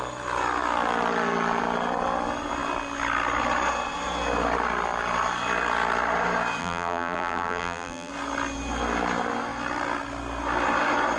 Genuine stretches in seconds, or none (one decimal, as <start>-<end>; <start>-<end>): 0.0-6.6; 8.1-11.2